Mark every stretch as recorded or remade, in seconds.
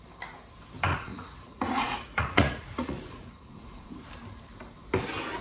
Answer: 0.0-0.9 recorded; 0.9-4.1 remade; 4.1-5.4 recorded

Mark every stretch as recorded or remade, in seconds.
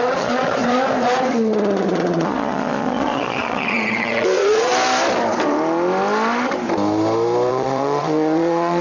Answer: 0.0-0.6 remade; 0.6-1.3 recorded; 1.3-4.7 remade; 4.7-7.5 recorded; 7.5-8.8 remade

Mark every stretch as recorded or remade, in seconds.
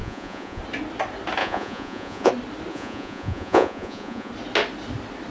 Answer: 0.0-0.6 remade; 0.6-1.4 recorded; 1.4-2.3 remade; 2.3-2.7 recorded; 2.7-4.3 remade; 4.3-5.3 recorded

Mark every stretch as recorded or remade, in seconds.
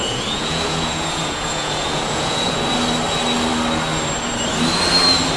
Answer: 0.0-2.6 remade; 2.6-5.4 recorded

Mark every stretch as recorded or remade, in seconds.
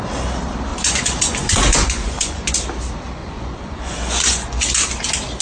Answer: 0.0-0.7 recorded; 0.7-2.5 remade; 2.5-3.2 recorded; 3.2-4.6 remade; 4.6-5.4 recorded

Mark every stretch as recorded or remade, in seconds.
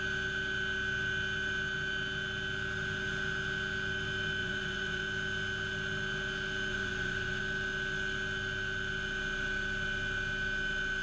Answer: 0.0-4.4 recorded; 4.4-5.0 remade; 5.0-6.7 recorded; 6.7-7.4 remade; 7.4-11.0 recorded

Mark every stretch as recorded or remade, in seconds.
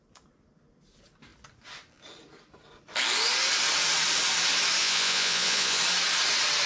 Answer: 0.0-4.8 recorded; 4.8-5.8 remade; 5.8-6.7 recorded